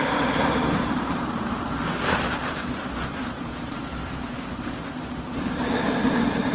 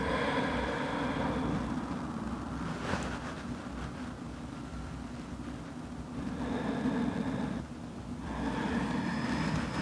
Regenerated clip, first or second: first